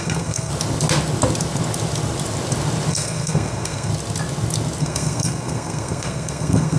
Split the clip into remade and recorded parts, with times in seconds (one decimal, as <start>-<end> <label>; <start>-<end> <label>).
0.0-0.5 remade; 0.5-2.9 recorded; 2.9-3.9 remade; 3.9-4.8 recorded; 4.8-6.8 remade